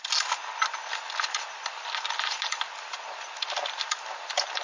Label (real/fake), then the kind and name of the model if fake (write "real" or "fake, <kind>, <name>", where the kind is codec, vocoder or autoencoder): real